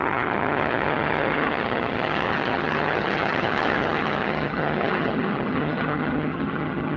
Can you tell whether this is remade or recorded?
remade